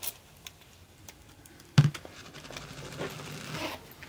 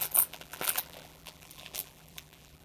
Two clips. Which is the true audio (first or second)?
first